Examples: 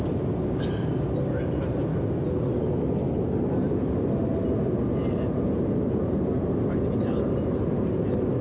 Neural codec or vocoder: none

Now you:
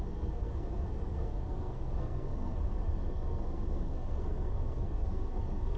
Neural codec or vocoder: codec, SNAC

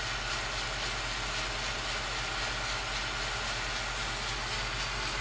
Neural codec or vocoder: none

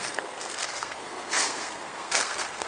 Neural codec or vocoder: codec, SNAC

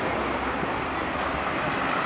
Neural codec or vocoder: none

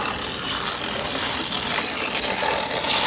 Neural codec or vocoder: none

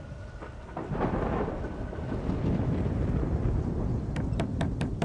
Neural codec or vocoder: none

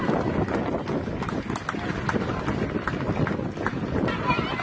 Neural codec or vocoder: none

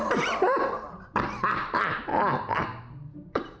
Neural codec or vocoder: vocoder, BigVGAN v2